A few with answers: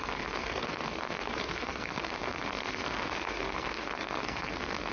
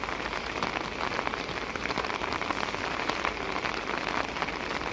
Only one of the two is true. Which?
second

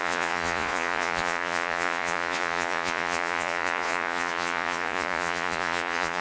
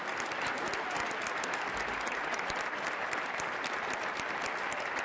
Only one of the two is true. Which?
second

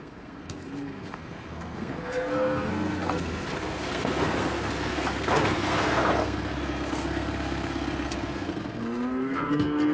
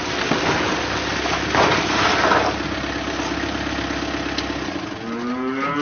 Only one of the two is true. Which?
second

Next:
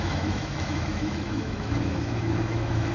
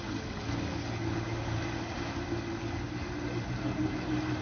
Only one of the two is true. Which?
second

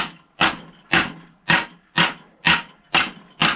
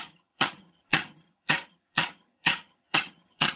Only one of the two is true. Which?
first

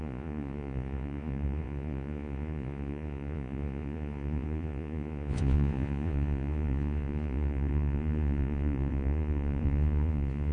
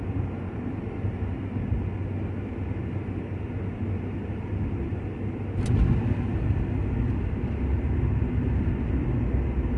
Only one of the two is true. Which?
second